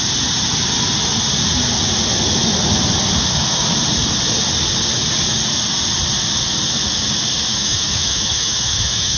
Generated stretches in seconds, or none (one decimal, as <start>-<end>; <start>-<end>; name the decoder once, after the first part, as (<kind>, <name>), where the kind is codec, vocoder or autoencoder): 7.5-9.2 (autoencoder, DAC-VAE)